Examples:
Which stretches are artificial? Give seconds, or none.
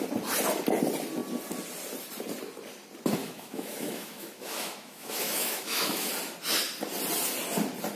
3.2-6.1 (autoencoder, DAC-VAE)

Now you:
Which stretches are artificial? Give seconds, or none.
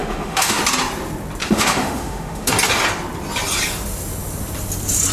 0.0-0.6 (autoencoder, DAC-VAE); 1.4-2.5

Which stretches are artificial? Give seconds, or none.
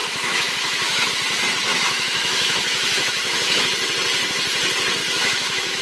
0.0-1.1 (autoencoder, DAC-VAE); 1.7-3.6; 5.0-5.8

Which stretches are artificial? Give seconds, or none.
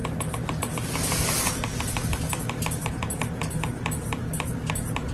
none